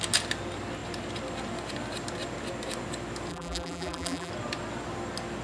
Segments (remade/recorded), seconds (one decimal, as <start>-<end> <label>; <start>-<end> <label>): 0.0-3.3 recorded; 3.3-4.3 remade; 4.3-5.4 recorded

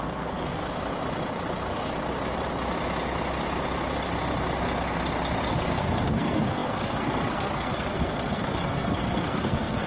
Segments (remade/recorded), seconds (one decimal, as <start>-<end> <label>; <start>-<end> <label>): 0.0-0.6 remade; 0.6-5.5 recorded; 5.5-9.9 remade

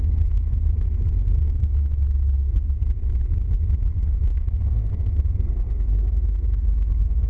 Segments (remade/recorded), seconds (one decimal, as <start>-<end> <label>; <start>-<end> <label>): 0.0-1.6 remade; 1.6-3.9 recorded; 3.9-7.3 remade